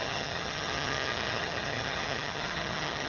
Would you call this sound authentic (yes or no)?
no